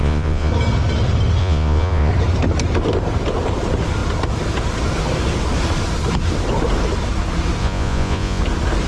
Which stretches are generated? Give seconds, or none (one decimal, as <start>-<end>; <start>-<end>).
0.0-0.5; 1.4-2.1; 7.6-8.4